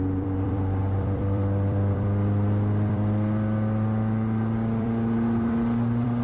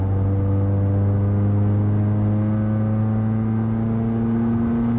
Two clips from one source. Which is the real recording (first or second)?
second